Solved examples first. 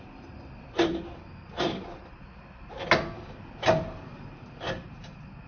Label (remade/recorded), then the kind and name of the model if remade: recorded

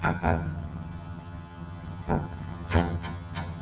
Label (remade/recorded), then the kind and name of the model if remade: remade, vocoder, HiFi-GAN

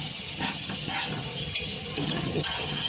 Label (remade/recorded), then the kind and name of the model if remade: remade, vocoder, HiFi-GAN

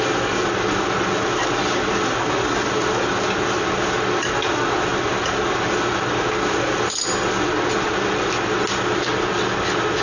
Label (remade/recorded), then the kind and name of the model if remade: recorded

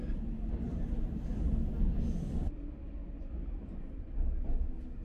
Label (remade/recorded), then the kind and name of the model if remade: recorded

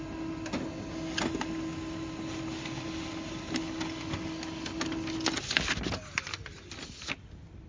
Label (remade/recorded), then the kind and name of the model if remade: recorded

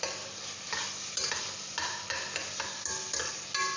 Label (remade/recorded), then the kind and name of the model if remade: recorded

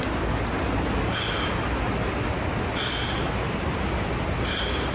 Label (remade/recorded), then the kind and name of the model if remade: recorded